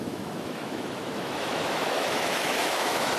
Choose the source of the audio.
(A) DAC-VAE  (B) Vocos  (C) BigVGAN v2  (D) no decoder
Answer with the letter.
A